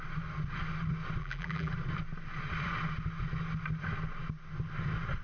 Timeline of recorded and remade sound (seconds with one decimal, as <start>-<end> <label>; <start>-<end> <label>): 0.0-1.2 recorded; 1.2-1.7 remade; 1.7-5.2 recorded